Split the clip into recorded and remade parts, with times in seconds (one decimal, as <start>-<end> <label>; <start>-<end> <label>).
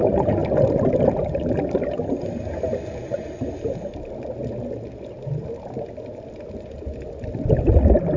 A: 0.0-8.2 recorded